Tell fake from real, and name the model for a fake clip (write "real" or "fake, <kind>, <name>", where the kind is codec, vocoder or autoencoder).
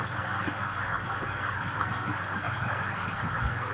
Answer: fake, codec, SNAC